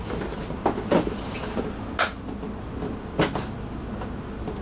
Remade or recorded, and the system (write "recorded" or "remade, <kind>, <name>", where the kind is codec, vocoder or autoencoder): recorded